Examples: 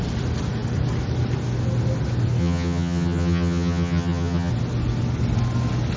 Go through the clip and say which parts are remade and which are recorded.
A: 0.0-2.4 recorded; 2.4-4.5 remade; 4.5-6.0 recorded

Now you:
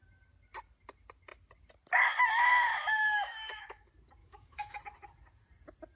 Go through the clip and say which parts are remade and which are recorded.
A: 0.0-2.7 recorded; 2.7-3.8 remade; 3.8-4.2 recorded; 4.2-4.8 remade; 4.8-6.0 recorded

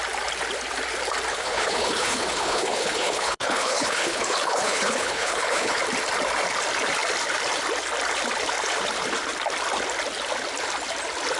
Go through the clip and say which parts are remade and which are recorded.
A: 0.0-1.3 recorded; 1.3-5.8 remade; 5.8-11.4 recorded